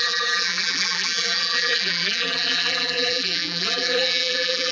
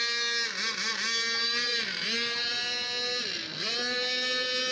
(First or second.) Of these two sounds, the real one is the second